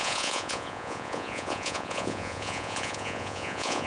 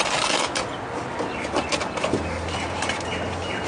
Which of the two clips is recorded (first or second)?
second